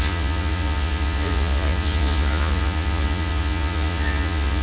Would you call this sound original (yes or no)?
no